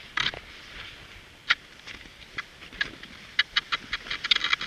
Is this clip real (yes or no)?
yes